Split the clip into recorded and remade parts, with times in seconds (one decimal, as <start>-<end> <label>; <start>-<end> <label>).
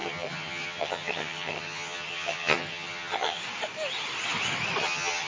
0.0-3.4 remade; 3.4-4.8 recorded; 4.8-5.3 remade